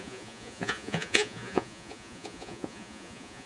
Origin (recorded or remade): remade